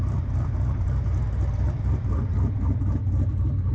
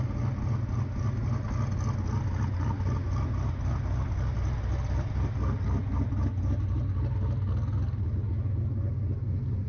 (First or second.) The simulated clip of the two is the first